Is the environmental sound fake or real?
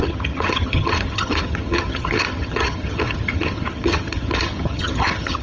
fake